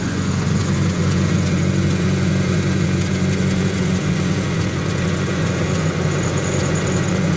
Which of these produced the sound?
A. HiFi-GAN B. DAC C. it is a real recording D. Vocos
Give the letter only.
D